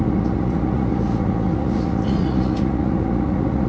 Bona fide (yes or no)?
no